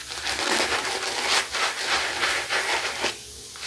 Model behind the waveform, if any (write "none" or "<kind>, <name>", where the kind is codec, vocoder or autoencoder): none